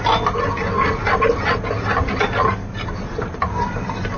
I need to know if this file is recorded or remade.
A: recorded